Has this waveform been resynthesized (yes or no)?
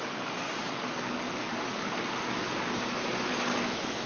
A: yes